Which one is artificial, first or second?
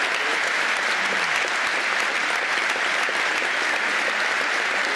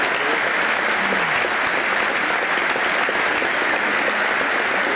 first